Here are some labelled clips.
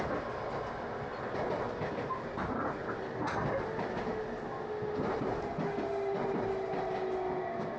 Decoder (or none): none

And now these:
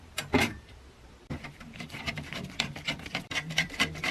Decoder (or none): vocoder, BigVGAN v2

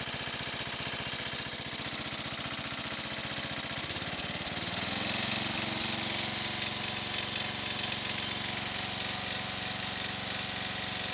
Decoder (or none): none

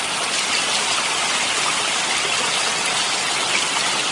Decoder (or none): none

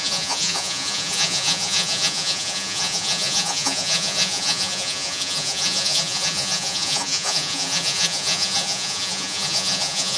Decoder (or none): vocoder, Vocos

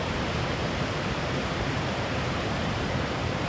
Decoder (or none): vocoder, BigVGAN v2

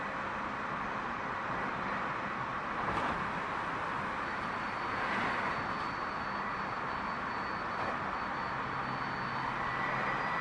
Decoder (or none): none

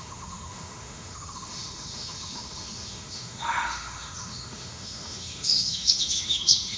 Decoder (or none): autoencoder, DAC-VAE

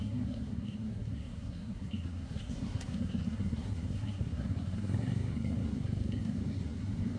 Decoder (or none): codec, SNAC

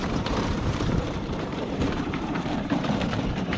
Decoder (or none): vocoder, BigVGAN v2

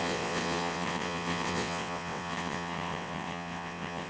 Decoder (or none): vocoder, WaveNeXt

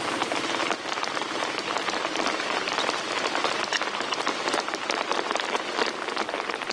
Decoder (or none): none